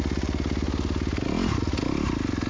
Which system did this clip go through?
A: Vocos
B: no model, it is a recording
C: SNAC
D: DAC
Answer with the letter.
B